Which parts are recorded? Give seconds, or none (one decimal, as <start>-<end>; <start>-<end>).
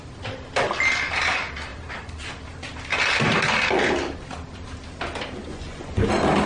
0.0-5.5; 6.1-6.5